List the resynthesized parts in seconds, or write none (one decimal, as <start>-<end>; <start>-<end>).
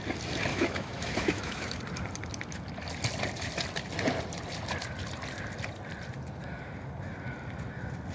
0.5-1.8